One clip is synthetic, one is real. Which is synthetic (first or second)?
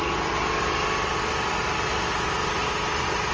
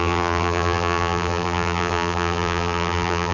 second